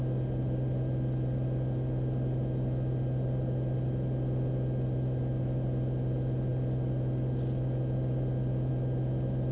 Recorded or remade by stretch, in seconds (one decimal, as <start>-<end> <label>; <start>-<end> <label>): 0.0-9.5 recorded